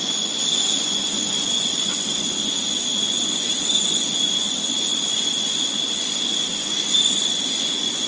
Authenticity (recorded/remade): remade